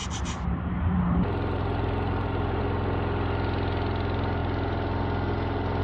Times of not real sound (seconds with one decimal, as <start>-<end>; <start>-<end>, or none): 0.0-2.6